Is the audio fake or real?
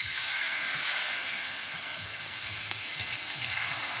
fake